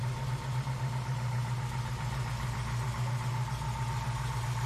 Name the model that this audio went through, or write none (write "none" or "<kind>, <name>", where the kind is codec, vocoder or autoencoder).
none